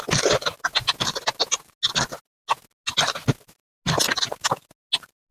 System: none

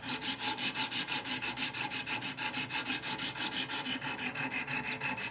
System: none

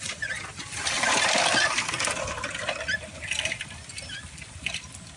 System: none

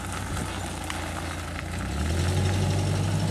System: none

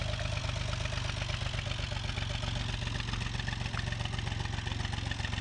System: none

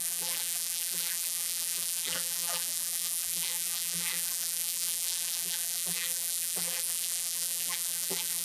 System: vocoder, BigVGAN v2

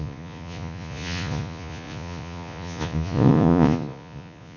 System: vocoder, Vocos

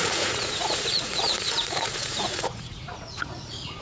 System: vocoder, Vocos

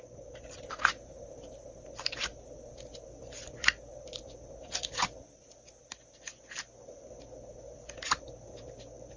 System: none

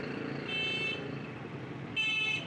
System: none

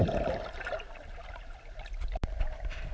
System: none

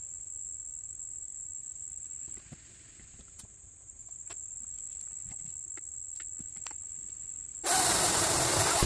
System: none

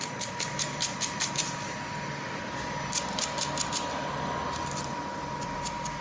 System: vocoder, BigVGAN v2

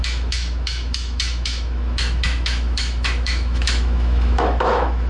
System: autoencoder, DAC-VAE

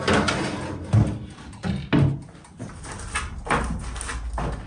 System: none